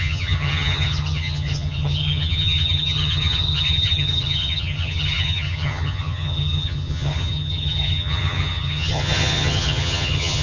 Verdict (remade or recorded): remade